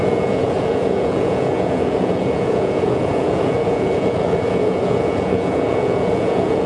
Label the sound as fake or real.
fake